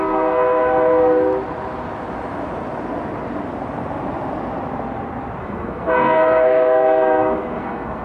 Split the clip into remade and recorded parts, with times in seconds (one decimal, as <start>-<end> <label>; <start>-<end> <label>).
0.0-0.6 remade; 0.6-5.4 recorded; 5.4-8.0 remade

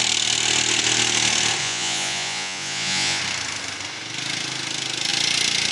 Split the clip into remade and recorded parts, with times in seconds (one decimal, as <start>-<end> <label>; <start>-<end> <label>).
0.0-1.6 recorded; 1.6-3.2 remade; 3.2-5.7 recorded

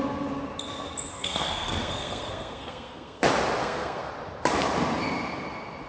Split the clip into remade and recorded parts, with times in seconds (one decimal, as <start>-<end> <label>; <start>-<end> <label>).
0.0-1.1 recorded; 1.1-3.2 remade; 3.2-3.6 recorded; 3.6-4.1 remade; 4.1-5.9 recorded

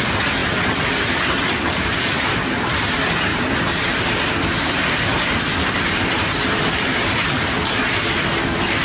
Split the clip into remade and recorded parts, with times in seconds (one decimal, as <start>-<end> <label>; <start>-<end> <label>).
0.0-0.4 recorded; 0.4-2.6 remade; 2.6-3.3 recorded; 3.3-8.2 remade; 8.2-8.8 recorded

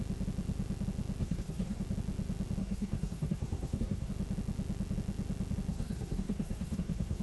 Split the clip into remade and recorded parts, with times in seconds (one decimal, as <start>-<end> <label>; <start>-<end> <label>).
0.0-1.2 recorded; 1.2-1.8 remade; 1.8-2.6 recorded; 2.6-4.1 remade; 4.1-5.7 recorded; 5.7-7.2 remade

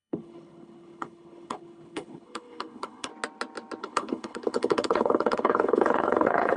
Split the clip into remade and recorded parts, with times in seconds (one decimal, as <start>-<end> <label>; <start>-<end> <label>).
0.0-3.1 remade; 3.1-3.8 recorded; 3.8-6.6 remade

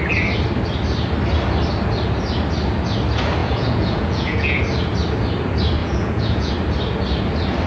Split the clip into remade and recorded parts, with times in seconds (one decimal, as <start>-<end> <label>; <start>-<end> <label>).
0.0-3.4 recorded; 3.4-4.6 remade; 4.6-5.8 recorded; 5.8-6.5 remade; 6.5-7.7 recorded

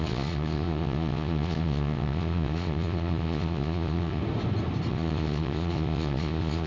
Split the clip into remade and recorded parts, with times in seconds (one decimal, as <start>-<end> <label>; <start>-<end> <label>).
0.0-4.2 remade; 4.2-4.9 recorded; 4.9-6.7 remade